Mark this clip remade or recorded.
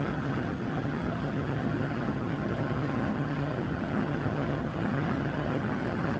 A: remade